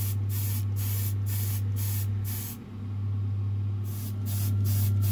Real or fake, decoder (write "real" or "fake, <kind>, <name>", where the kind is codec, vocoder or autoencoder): real